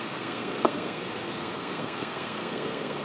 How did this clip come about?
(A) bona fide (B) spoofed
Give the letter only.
B